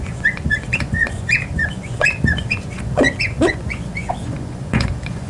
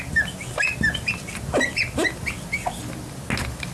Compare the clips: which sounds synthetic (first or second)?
first